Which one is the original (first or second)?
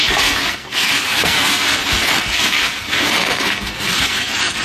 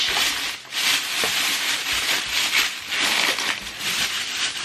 second